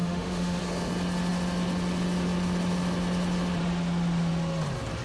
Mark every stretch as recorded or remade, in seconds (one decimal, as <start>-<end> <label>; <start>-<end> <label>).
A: 0.0-0.6 remade; 0.6-5.0 recorded